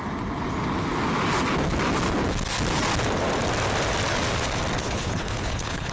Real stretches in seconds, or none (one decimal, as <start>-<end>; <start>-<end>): 0.0-4.8